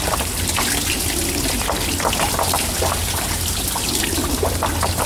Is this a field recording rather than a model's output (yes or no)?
yes